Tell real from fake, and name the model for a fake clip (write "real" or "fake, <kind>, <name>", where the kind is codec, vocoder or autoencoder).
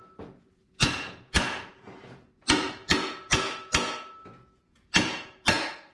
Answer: fake, vocoder, Vocos